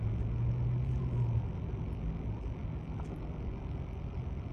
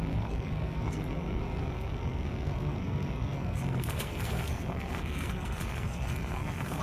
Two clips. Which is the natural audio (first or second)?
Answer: first